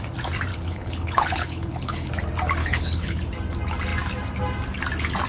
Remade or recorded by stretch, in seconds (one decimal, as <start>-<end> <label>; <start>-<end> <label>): 0.0-0.5 recorded; 0.5-2.1 remade; 2.1-2.6 recorded; 2.6-3.2 remade; 3.2-5.3 recorded